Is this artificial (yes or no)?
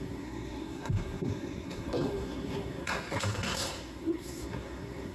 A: yes